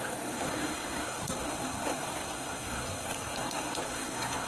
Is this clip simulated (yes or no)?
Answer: yes